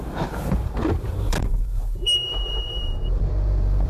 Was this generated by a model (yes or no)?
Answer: yes